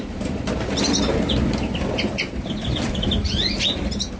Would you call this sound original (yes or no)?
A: no